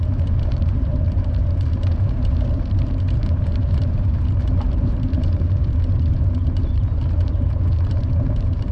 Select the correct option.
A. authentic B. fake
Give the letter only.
B